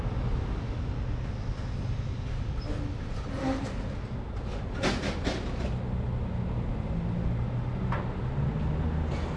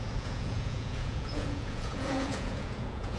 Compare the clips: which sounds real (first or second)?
first